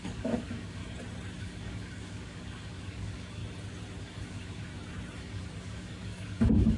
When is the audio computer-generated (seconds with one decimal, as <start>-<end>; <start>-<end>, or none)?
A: 0.0-0.8; 1.4-3.4; 4.0-4.7; 5.2-6.8

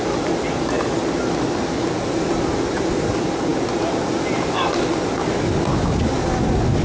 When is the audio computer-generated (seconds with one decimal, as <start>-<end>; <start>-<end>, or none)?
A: none